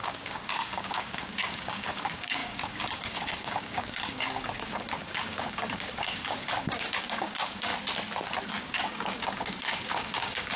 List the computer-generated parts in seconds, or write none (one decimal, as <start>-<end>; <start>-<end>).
0.0-7.7; 8.5-10.6